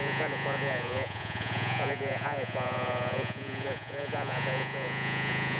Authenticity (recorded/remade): remade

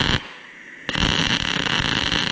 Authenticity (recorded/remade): recorded